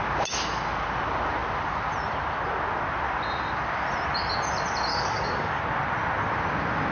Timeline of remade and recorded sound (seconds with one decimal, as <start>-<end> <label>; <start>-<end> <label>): 0.0-4.9 recorded; 4.9-5.6 remade; 5.6-6.9 recorded